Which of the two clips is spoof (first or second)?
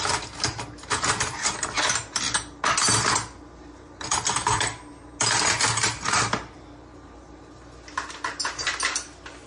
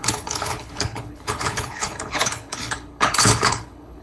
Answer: second